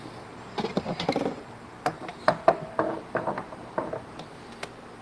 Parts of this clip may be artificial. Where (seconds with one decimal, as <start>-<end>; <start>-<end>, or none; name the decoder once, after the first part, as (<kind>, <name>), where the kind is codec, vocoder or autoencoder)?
2.1-4.5 (vocoder, BigVGAN v2)